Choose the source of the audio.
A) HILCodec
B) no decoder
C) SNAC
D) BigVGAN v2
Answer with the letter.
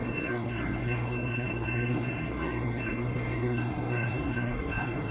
C